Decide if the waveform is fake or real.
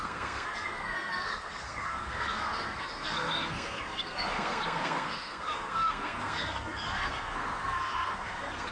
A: fake